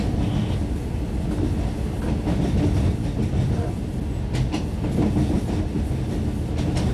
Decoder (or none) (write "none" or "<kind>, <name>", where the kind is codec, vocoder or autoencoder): none